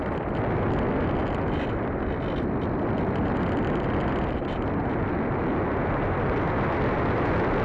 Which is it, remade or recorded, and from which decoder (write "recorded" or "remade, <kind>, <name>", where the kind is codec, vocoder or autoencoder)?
recorded